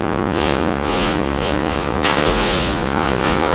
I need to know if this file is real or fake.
fake